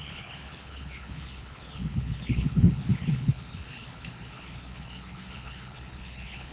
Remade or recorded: remade